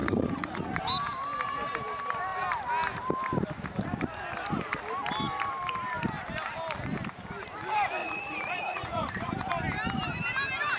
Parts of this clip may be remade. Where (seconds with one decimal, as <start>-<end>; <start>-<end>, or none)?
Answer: 0.0-0.8; 8.0-9.5